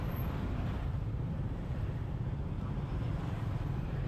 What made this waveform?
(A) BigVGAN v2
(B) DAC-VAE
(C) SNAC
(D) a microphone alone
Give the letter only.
A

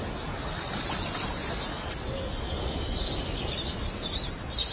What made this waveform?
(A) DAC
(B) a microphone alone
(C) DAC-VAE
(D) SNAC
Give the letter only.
B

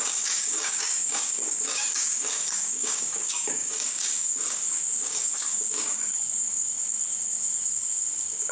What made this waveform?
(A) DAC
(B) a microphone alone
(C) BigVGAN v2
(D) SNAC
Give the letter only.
A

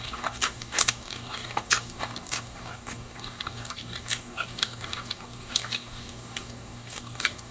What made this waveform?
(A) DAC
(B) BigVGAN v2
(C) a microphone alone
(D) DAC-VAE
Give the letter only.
A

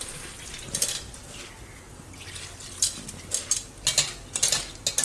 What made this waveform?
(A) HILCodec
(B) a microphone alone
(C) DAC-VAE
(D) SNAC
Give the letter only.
B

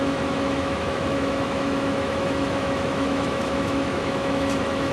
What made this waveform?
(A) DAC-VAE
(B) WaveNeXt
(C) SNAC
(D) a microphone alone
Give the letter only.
A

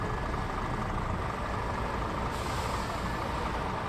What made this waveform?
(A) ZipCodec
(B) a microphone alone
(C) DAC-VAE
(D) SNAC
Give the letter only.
B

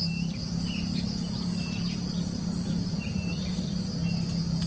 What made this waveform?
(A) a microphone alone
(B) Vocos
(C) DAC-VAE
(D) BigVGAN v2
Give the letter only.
A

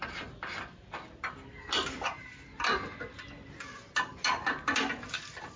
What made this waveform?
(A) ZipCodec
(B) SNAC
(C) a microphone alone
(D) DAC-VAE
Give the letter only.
C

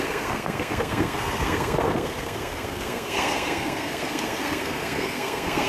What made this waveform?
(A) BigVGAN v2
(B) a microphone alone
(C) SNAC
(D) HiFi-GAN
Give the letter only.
C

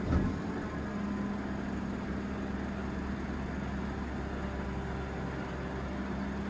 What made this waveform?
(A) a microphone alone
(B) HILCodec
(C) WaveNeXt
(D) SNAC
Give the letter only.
A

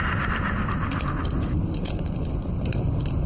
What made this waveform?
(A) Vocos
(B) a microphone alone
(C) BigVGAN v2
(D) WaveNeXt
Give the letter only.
B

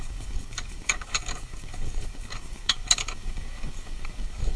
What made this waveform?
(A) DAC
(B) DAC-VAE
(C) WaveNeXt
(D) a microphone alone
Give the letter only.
A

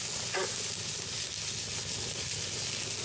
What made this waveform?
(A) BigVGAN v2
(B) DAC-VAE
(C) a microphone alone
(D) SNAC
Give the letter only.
C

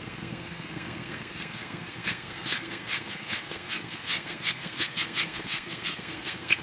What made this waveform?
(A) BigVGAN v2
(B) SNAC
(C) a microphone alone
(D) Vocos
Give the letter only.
B